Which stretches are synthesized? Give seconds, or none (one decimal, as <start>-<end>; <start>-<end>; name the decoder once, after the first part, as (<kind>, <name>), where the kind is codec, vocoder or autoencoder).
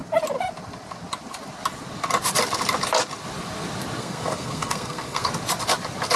4.0-5.3 (codec, SNAC)